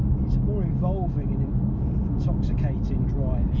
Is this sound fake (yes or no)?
no